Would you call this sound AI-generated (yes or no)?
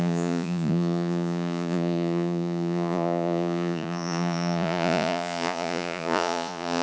yes